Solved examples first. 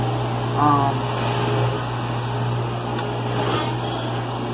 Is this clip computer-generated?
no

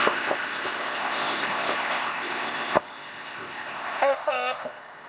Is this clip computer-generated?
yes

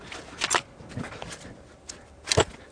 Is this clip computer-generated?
no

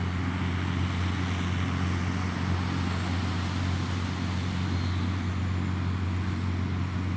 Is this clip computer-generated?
no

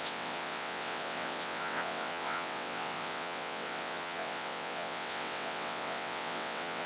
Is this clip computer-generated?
yes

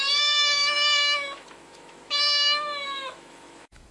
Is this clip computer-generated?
yes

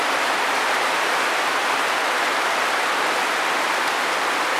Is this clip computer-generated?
yes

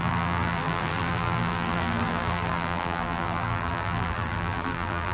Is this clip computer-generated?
yes